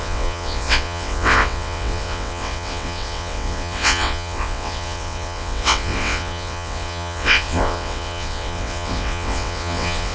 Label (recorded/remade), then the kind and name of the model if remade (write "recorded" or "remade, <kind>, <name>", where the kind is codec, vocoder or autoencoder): remade, vocoder, WaveNeXt